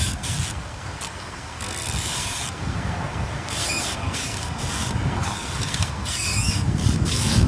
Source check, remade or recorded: remade